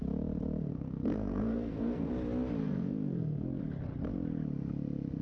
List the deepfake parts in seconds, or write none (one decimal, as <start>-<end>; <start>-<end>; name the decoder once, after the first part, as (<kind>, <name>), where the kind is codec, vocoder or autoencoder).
0.7-2.1 (codec, SNAC); 2.6-3.6